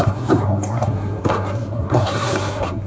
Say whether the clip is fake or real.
fake